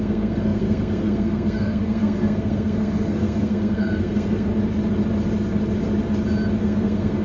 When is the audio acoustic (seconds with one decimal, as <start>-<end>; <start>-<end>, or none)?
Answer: 4.5-6.6